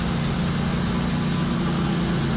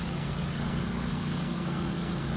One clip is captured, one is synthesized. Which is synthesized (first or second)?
second